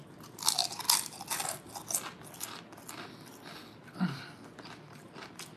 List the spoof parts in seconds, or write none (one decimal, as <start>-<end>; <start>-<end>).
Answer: none